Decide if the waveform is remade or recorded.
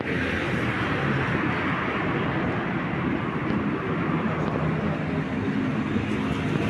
recorded